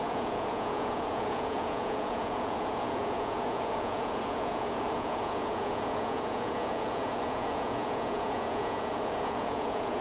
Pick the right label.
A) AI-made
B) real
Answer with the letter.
A